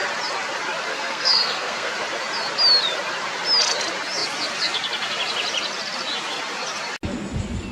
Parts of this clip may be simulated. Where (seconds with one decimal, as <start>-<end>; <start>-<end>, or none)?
0.9-1.9